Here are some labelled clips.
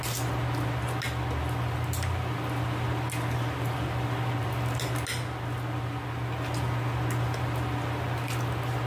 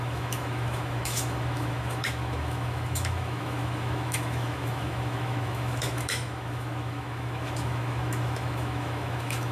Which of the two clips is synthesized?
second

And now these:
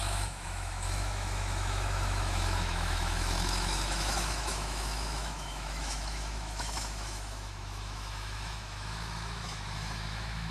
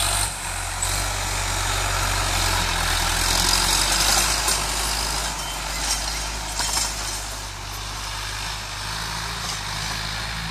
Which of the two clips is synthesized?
first